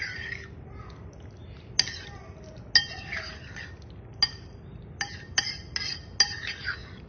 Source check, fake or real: real